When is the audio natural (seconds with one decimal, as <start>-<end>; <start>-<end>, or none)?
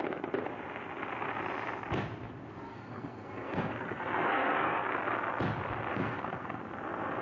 0.0-2.7; 4.9-5.9; 6.6-7.2